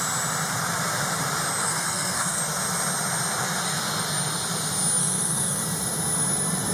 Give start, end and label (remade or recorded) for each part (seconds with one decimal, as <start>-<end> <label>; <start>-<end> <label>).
0.0-1.6 recorded; 1.6-2.4 remade; 2.4-5.0 recorded; 5.0-5.6 remade; 5.6-6.7 recorded